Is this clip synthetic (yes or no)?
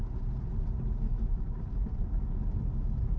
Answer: no